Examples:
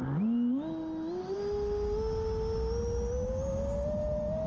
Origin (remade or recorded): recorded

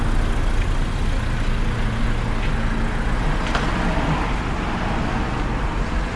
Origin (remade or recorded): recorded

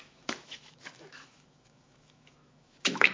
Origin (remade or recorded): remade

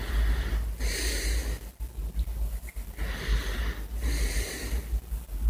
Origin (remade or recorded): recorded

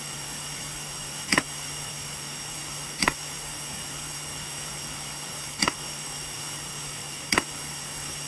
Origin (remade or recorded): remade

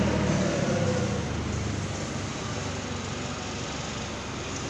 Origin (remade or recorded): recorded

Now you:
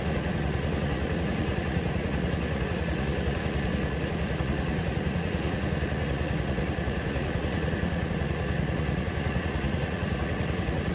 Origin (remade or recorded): remade